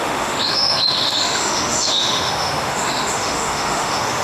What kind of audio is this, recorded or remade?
remade